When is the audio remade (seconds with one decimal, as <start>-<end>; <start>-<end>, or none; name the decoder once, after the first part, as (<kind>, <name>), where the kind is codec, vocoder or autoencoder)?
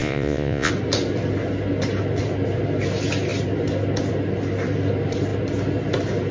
0.0-0.7 (vocoder, Vocos)